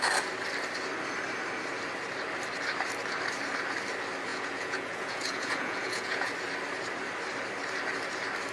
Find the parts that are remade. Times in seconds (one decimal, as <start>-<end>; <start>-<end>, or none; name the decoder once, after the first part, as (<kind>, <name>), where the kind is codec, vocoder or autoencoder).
4.3-6.3 (vocoder, Vocos)